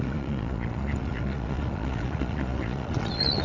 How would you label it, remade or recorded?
remade